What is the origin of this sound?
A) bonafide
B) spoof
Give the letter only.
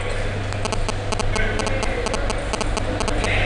A